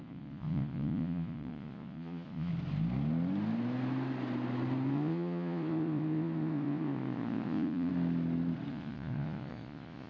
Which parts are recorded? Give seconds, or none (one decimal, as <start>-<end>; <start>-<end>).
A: 2.5-4.9; 7.9-8.7